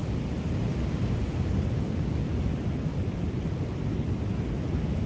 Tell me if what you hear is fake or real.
real